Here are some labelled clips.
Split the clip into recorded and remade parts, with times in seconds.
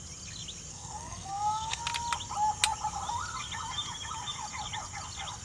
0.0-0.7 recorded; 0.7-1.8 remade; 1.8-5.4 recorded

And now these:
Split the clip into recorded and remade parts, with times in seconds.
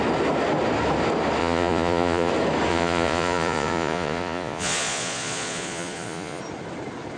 0.0-1.4 recorded; 1.4-2.3 remade; 2.3-2.7 recorded; 2.7-6.4 remade; 6.4-7.2 recorded